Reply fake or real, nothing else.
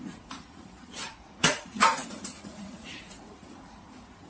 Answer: fake